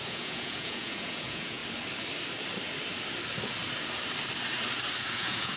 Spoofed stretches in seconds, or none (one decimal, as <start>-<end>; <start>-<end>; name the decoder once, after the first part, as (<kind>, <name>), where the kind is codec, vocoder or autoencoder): 0.0-1.6 (vocoder, Vocos); 5.0-5.6